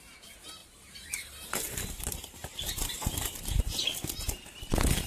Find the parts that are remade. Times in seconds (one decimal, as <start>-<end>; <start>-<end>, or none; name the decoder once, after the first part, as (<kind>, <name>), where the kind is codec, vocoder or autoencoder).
0.6-3.7 (vocoder, BigVGAN v2)